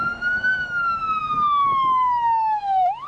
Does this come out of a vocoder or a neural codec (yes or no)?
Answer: yes